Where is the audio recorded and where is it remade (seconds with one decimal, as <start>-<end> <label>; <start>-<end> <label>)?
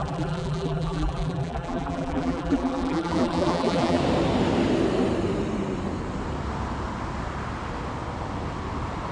0.0-4.0 remade; 4.0-9.1 recorded